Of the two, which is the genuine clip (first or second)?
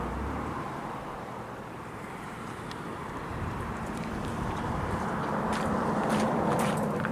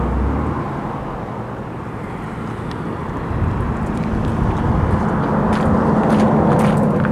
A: second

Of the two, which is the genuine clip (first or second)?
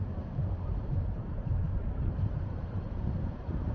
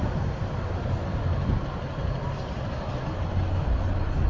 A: second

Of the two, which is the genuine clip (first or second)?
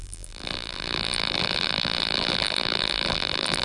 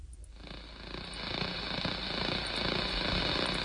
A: second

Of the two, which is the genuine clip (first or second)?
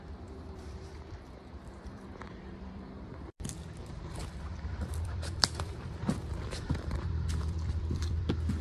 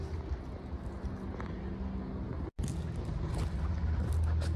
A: second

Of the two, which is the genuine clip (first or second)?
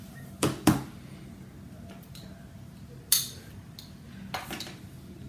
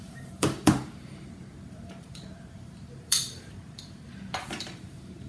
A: first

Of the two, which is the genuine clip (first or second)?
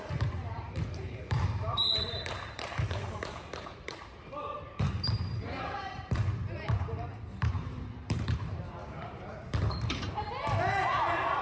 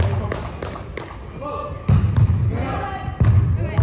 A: second